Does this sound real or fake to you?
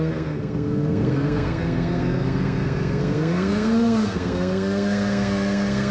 fake